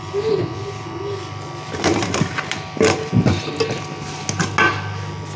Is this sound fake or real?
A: real